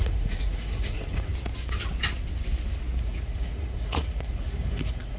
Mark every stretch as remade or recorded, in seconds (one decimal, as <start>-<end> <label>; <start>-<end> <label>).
0.0-1.3 remade; 1.3-3.0 recorded; 3.0-5.2 remade